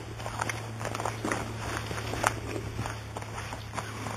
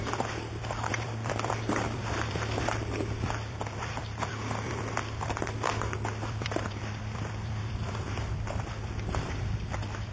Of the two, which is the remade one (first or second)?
second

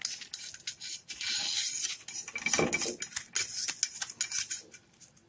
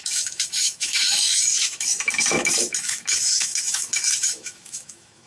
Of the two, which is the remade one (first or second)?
second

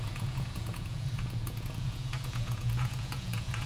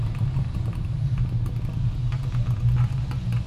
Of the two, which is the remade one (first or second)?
first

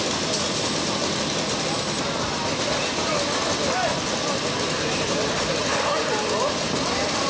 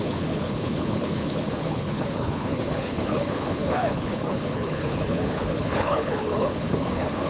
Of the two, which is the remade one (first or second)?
second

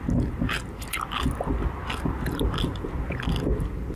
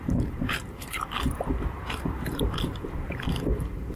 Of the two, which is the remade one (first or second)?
second